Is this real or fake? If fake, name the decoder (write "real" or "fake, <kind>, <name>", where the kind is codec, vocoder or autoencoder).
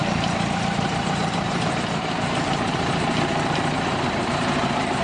fake, vocoder, BigVGAN v2